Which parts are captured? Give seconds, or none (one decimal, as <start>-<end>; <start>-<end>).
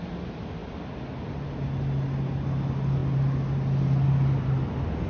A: 0.0-5.1